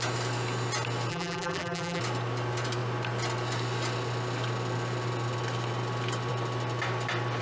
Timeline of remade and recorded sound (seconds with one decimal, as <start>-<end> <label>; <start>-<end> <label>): 0.0-1.1 recorded; 1.1-2.0 remade; 2.0-7.4 recorded